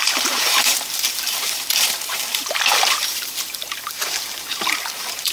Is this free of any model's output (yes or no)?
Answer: no